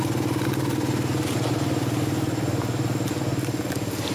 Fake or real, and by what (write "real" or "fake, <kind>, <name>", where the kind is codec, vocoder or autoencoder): real